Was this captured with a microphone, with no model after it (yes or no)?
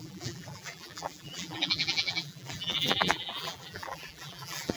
no